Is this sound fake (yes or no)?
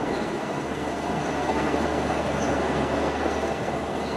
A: yes